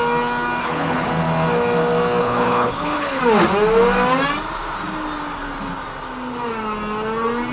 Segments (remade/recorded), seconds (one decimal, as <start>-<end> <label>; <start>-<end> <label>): 0.0-0.6 recorded; 0.6-1.1 remade; 1.1-2.2 recorded; 2.2-3.2 remade; 3.2-7.5 recorded